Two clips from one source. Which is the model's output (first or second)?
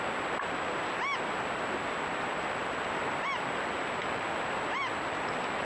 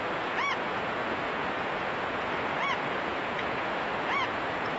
second